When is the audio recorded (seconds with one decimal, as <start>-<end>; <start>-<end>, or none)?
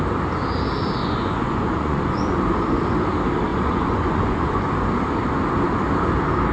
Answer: 0.0-1.0; 2.4-3.5; 4.7-6.5